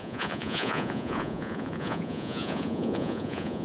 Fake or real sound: fake